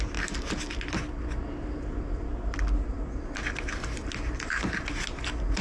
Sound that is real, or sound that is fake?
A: real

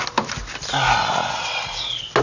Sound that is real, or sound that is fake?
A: real